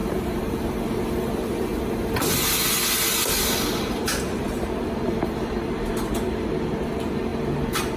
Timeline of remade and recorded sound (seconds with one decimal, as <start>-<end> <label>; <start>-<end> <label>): 0.0-1.7 remade; 1.7-3.3 recorded; 3.3-8.0 remade